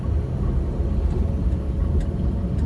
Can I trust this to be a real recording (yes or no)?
yes